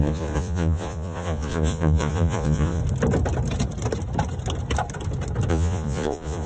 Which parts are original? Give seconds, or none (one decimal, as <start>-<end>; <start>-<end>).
2.8-5.5